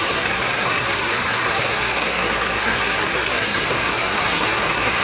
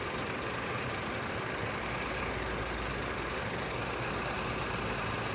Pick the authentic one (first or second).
second